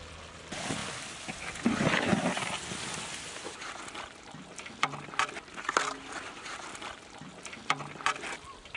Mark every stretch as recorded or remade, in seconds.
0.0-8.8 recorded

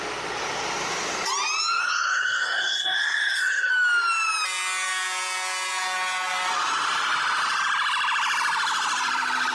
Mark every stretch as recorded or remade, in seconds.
0.0-1.8 recorded; 1.8-3.7 remade; 3.7-9.5 recorded

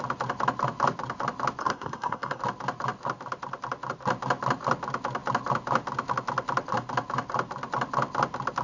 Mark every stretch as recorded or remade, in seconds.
0.0-1.6 recorded; 1.6-2.4 remade; 2.4-8.6 recorded

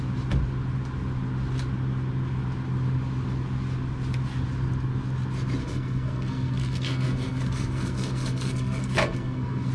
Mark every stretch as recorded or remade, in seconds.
0.0-5.6 recorded; 5.6-9.7 remade